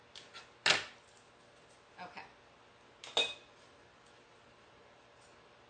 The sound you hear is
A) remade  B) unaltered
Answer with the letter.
B